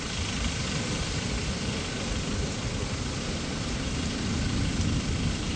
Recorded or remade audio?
recorded